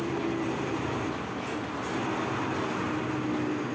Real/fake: real